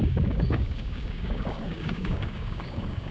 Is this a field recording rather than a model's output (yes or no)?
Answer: no